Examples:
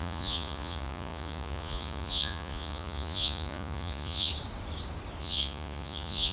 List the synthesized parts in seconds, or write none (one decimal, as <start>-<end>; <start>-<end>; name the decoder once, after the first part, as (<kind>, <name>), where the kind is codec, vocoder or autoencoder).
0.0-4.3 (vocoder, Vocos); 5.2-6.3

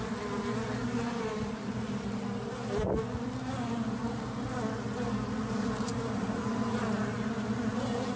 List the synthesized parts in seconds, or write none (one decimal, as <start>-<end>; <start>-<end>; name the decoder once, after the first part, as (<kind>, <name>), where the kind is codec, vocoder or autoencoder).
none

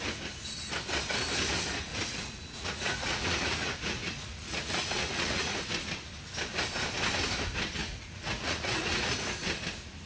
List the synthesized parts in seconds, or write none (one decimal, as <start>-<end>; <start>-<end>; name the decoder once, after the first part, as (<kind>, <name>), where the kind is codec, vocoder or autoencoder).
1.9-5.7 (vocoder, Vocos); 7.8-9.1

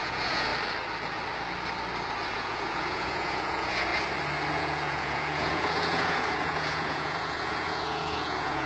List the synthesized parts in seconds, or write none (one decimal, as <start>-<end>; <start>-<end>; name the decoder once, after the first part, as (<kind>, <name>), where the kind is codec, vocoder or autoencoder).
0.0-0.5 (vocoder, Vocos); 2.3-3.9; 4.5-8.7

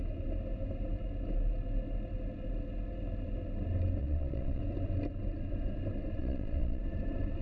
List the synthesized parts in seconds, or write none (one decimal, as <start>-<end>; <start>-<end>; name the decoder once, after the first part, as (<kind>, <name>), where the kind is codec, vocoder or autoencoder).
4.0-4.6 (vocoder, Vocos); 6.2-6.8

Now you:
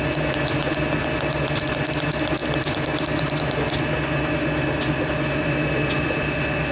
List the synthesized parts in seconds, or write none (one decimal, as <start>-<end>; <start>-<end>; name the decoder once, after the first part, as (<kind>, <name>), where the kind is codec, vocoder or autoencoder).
none